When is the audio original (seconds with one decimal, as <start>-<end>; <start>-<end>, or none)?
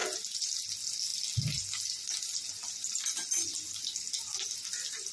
0.0-5.1